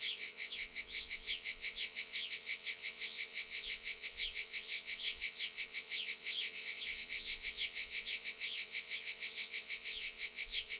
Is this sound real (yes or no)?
no